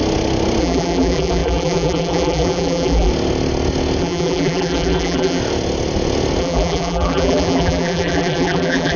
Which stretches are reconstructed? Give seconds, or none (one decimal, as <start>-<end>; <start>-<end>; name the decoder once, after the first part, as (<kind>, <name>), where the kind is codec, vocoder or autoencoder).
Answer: 0.6-3.1 (vocoder, BigVGAN v2); 4.0-5.4; 6.4-9.0